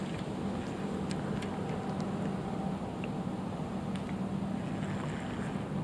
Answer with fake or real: real